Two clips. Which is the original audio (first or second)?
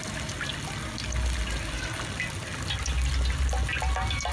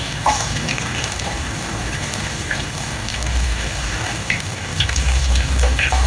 first